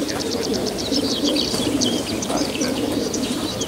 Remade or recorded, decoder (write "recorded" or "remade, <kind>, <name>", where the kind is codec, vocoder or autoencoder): remade, vocoder, BigVGAN v2